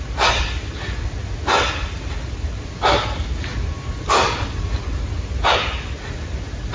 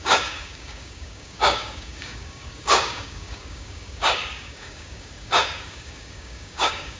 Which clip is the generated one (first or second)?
second